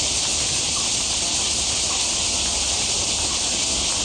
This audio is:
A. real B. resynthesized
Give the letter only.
A